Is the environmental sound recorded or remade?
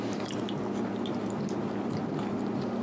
recorded